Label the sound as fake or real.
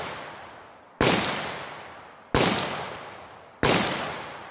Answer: real